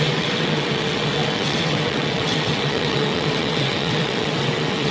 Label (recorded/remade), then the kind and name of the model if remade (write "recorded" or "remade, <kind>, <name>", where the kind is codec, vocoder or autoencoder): remade, vocoder, WaveNeXt